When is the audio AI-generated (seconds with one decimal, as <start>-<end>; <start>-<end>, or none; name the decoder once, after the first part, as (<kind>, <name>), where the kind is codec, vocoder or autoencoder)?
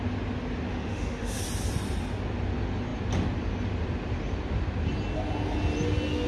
0.7-1.4 (autoencoder, DAC-VAE)